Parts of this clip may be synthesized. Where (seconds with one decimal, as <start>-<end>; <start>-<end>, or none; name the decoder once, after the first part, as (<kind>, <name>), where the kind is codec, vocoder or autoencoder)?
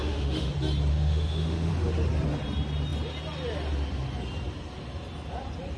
0.0-0.5 (autoencoder, DAC-VAE); 0.9-1.7